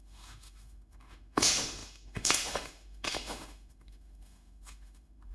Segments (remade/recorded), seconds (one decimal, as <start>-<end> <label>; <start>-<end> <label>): 0.0-5.3 remade